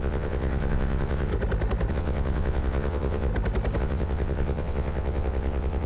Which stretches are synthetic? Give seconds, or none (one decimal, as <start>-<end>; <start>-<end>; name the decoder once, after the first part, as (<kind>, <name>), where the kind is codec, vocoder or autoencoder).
0.0-1.3 (vocoder, WaveNeXt); 1.9-3.3; 3.8-5.9